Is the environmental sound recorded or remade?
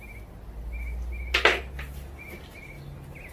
recorded